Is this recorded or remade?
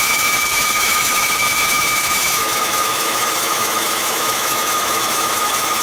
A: remade